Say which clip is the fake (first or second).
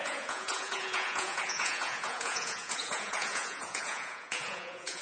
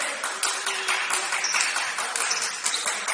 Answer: first